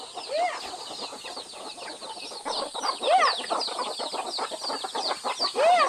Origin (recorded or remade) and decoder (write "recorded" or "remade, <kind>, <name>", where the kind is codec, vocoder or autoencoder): recorded